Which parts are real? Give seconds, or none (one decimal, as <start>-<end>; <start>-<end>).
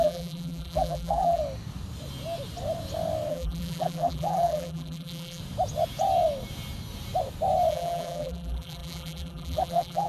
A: 1.4-3.3; 5.4-7.7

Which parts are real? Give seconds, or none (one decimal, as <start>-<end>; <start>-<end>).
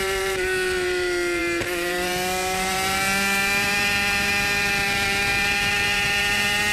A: none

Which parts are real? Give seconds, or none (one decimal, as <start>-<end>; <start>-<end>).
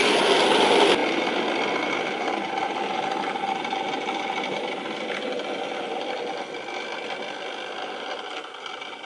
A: 0.0-9.1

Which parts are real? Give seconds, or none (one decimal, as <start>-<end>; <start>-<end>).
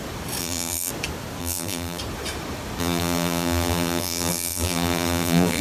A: 0.0-0.4; 0.9-1.4; 2.0-2.8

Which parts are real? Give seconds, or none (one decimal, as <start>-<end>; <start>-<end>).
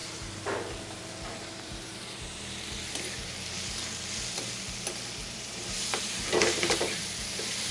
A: 2.9-5.2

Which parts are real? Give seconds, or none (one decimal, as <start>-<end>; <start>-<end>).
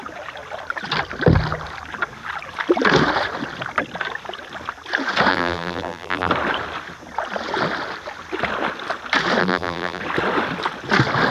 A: 0.0-5.3; 6.3-9.4; 10.0-11.3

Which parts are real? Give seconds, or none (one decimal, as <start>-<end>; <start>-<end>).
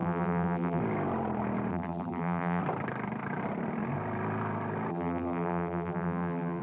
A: 0.8-1.7; 2.6-4.9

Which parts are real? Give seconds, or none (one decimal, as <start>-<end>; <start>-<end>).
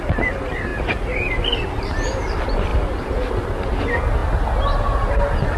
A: 0.0-5.6